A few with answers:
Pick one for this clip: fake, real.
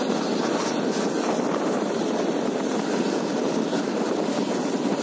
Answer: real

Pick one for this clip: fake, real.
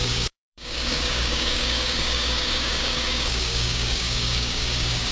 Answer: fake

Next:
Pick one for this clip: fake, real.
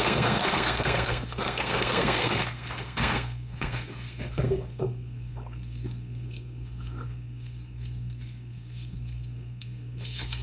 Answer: fake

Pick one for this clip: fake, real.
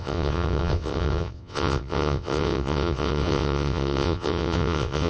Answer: fake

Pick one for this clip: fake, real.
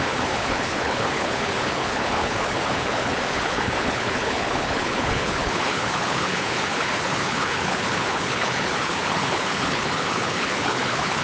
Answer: fake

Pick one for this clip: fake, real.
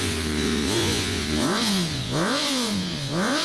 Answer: fake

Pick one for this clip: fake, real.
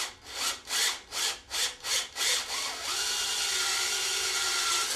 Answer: real